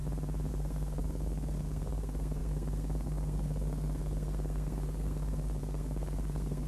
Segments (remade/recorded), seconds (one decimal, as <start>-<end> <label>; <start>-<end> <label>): 0.0-0.5 recorded; 0.5-6.7 remade